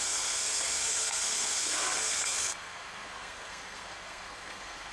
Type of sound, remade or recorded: remade